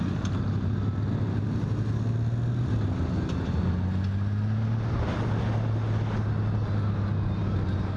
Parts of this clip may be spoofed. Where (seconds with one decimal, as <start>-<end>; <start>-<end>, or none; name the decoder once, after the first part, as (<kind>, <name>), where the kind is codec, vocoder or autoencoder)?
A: none